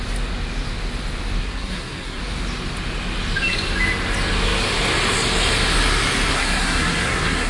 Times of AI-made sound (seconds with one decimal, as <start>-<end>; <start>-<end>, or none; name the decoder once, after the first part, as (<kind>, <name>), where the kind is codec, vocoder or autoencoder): 1.4-2.2 (codec, SNAC); 6.3-7.5